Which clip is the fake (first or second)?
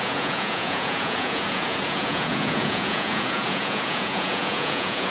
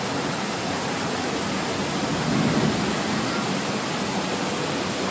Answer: first